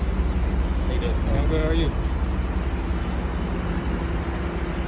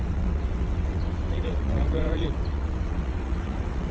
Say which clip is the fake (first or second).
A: second